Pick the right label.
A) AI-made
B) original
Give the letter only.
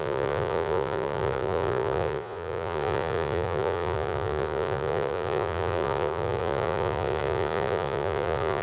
A